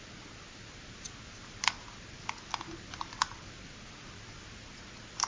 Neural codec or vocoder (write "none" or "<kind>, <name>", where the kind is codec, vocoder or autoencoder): none